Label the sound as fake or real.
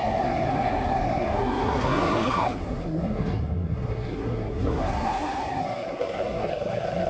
fake